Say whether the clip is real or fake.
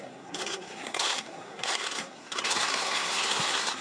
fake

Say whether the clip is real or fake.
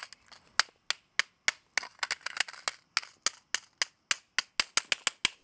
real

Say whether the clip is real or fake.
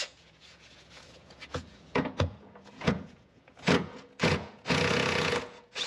fake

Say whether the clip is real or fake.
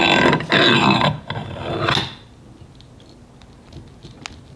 real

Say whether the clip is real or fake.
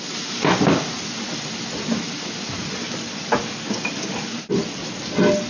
real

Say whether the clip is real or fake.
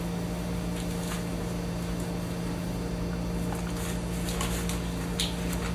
real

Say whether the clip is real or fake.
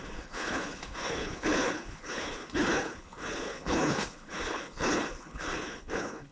fake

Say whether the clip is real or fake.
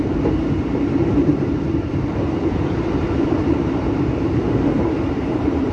fake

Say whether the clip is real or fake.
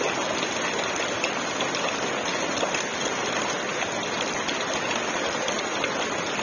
real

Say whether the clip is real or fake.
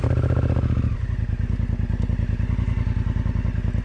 real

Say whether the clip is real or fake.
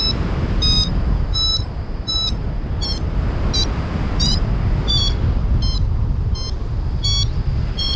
real